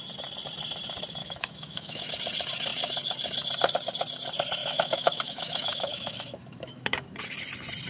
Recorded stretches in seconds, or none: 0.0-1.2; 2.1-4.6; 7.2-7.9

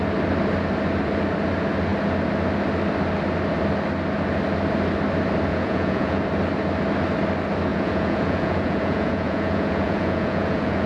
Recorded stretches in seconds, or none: 0.0-5.5; 6.2-7.7

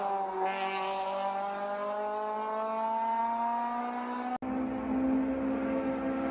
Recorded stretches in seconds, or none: 0.0-6.3